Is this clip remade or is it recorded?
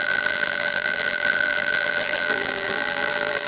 remade